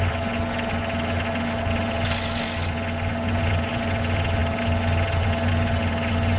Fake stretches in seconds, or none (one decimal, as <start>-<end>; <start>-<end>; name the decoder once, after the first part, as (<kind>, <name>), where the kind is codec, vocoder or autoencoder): none